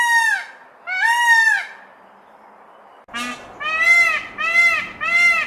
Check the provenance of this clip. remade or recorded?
recorded